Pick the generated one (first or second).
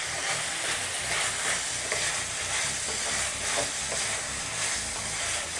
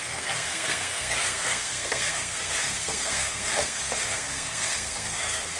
second